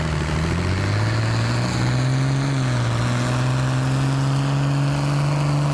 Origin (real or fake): real